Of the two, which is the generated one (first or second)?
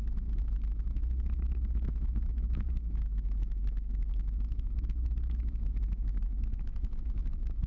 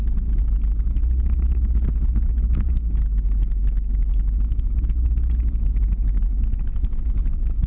first